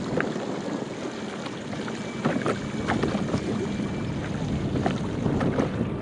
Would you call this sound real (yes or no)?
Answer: yes